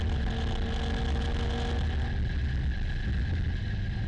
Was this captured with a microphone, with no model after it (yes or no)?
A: yes